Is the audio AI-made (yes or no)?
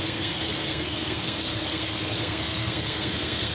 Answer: yes